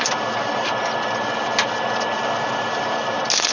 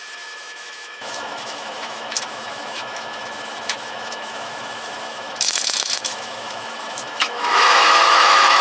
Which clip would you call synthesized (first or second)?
second